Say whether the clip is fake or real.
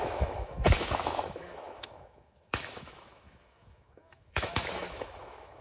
fake